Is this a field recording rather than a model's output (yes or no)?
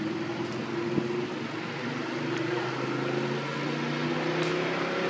yes